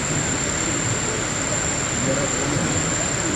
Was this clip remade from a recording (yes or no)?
no